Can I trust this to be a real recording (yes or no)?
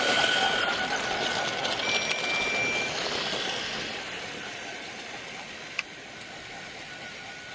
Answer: yes